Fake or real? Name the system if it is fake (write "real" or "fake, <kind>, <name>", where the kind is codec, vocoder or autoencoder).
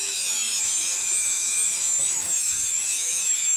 fake, autoencoder, DAC-VAE